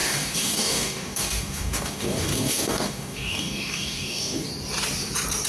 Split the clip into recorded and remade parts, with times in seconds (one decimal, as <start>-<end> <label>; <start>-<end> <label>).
0.0-4.5 remade; 4.5-5.5 recorded